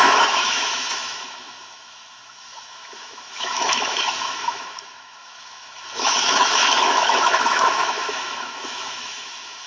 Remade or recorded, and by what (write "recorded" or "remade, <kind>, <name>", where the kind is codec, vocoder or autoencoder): remade, autoencoder, DAC-VAE